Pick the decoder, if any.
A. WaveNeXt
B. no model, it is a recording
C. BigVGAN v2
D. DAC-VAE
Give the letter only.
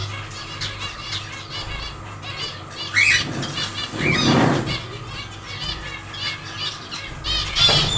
B